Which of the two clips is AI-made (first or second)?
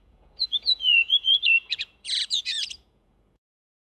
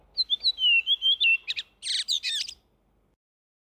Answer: first